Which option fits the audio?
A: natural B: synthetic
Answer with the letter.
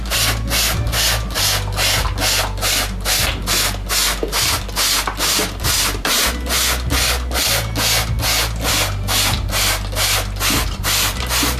A